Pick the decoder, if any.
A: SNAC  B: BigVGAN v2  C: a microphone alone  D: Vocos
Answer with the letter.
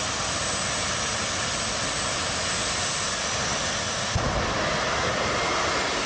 C